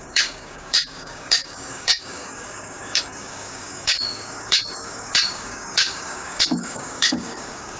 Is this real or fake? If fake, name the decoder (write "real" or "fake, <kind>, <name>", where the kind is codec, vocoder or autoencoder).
fake, codec, DAC